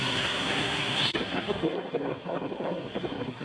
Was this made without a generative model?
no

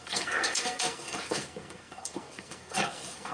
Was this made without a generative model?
no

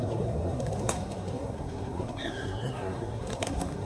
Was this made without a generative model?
no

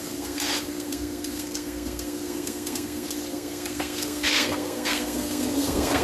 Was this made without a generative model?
no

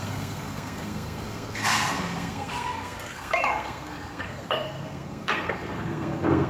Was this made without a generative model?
no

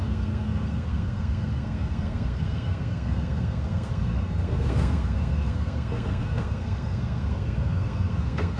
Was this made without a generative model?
no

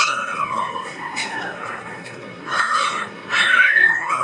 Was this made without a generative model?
no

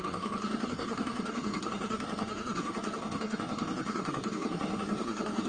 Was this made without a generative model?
no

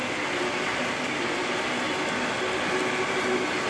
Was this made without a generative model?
yes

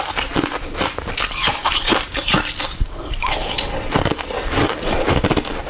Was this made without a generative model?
yes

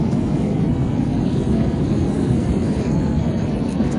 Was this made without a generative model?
no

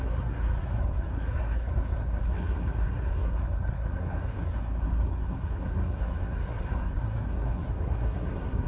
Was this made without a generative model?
no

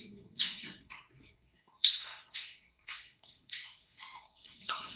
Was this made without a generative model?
no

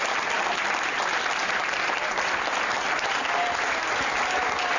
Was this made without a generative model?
yes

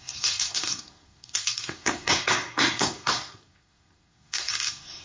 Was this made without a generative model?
no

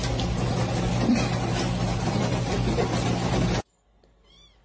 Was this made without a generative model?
yes